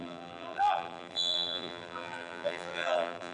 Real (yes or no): no